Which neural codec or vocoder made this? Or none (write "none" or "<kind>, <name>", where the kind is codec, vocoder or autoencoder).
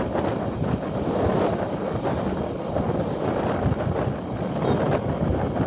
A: none